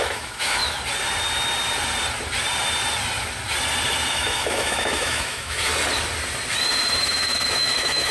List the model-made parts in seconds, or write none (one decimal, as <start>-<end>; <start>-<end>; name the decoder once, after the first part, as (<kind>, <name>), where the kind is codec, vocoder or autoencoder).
0.0-0.6 (autoencoder, DAC-VAE); 4.1-5.7; 7.0-8.1